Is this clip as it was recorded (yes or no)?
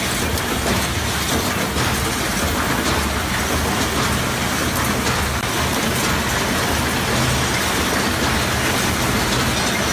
yes